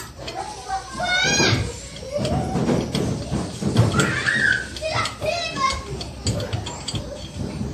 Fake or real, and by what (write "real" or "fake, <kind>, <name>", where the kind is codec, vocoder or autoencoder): real